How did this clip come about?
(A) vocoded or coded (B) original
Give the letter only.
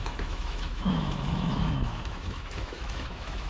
A